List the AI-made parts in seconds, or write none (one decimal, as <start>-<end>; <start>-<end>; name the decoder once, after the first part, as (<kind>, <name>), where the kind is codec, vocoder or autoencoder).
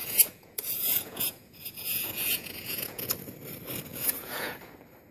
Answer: 0.0-3.1 (vocoder, Vocos); 3.9-4.6